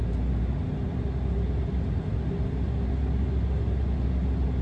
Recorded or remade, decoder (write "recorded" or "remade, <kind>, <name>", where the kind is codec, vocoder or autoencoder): recorded